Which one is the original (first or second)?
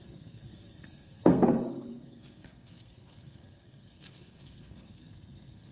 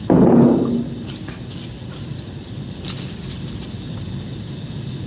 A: second